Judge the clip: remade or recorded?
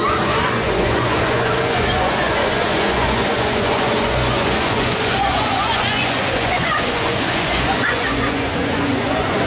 remade